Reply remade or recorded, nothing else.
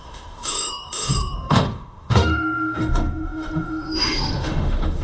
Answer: remade